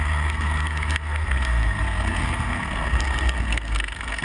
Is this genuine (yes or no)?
no